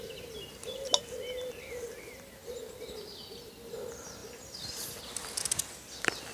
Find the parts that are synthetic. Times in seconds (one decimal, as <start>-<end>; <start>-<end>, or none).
2.4-3.0